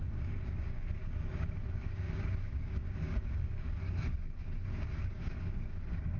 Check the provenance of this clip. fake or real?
fake